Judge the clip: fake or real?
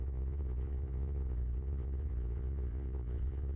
fake